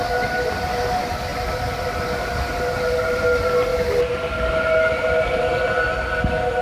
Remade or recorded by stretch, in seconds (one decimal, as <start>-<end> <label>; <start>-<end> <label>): 0.0-3.7 recorded; 3.7-4.5 remade; 4.5-6.6 recorded